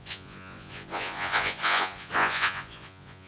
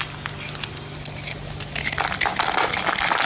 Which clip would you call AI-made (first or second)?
first